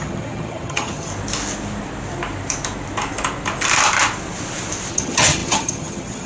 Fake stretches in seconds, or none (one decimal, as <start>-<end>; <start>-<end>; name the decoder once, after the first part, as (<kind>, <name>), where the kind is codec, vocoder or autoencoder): 0.0-1.1 (vocoder, HiFi-GAN); 4.9-6.3

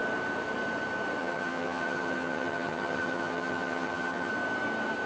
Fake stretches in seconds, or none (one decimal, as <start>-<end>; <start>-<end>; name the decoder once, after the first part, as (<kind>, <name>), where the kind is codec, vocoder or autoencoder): 1.2-4.3 (vocoder, HiFi-GAN)

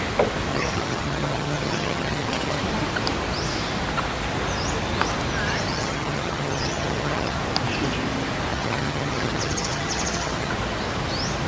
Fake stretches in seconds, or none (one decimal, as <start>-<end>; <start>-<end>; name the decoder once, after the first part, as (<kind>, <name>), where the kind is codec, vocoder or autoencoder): 0.5-2.6 (vocoder, HiFi-GAN); 5.7-7.4; 8.5-10.5

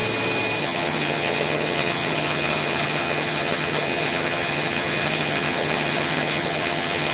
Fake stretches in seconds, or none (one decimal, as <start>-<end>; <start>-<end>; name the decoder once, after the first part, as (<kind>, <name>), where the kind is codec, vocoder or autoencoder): 0.6-7.1 (vocoder, HiFi-GAN)